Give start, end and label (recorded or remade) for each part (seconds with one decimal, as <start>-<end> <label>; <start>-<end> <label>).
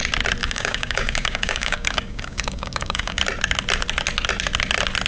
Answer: 0.0-0.4 recorded; 0.4-3.2 remade; 3.2-5.1 recorded